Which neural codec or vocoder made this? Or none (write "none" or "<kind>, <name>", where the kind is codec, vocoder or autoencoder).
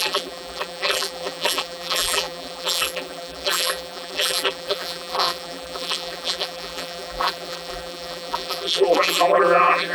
vocoder, BigVGAN v2